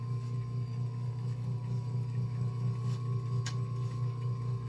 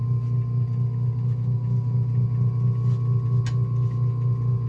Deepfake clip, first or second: first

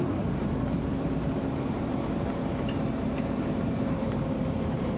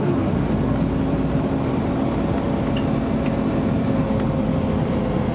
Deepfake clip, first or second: first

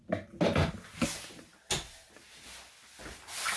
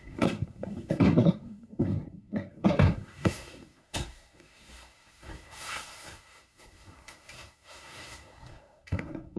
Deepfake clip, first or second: second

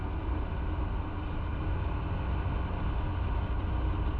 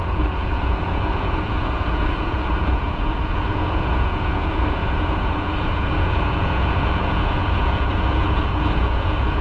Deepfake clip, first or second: second